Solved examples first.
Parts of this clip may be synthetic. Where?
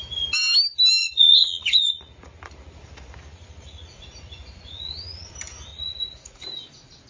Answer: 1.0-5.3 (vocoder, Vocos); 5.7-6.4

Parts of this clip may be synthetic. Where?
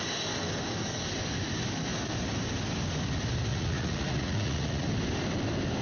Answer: 3.5-4.9 (vocoder, Vocos)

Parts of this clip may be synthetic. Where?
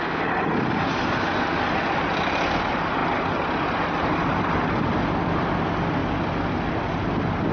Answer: none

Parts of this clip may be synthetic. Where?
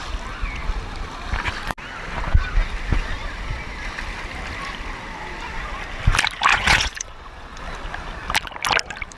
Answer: 6.5-7.6 (vocoder, Vocos)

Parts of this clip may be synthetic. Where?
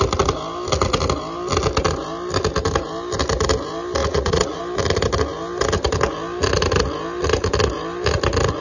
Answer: 4.0-4.6 (vocoder, Vocos)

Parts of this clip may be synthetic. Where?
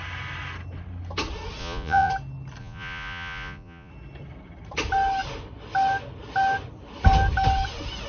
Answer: 1.6-2.1 (vocoder, Vocos); 2.6-3.9